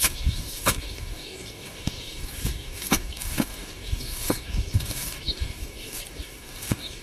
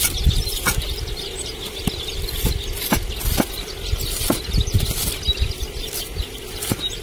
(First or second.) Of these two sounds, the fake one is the first